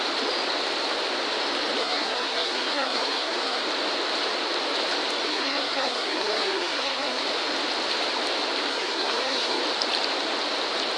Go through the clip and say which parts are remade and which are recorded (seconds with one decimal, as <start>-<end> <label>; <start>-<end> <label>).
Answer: 0.0-1.8 recorded; 1.8-3.6 remade; 3.6-5.3 recorded; 5.3-7.2 remade; 7.2-8.7 recorded; 8.7-9.6 remade; 9.6-11.0 recorded